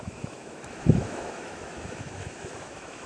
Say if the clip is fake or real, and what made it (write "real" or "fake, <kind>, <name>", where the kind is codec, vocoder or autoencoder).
fake, autoencoder, DAC-VAE